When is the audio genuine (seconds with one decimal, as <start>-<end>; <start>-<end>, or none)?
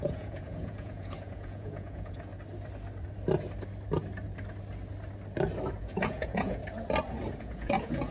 2.3-5.8; 6.6-7.4